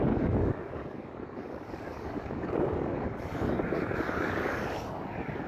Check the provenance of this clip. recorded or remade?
remade